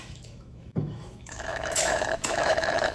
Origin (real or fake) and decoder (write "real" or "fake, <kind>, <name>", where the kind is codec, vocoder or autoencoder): fake, autoencoder, DAC-VAE